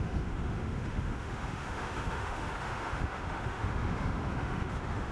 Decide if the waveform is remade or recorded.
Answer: remade